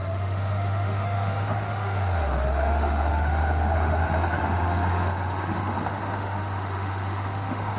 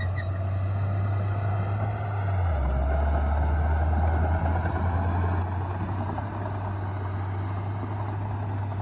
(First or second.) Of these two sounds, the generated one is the first